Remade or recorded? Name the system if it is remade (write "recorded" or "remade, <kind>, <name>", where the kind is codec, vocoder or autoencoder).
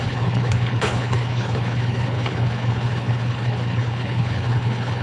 remade, codec, HILCodec